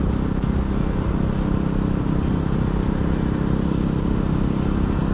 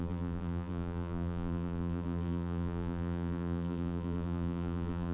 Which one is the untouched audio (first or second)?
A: first